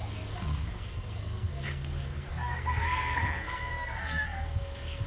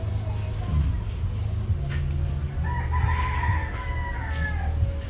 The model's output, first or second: first